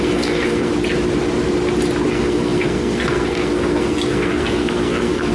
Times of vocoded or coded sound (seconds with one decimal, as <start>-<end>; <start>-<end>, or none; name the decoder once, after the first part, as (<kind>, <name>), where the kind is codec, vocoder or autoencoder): 0.0-0.7 (codec, SNAC); 2.1-5.3